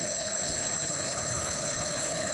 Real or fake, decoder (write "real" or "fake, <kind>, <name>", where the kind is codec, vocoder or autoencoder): fake, codec, HILCodec